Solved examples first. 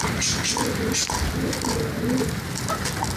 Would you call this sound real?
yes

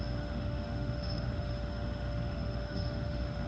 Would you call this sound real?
no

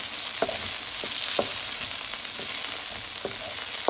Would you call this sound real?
yes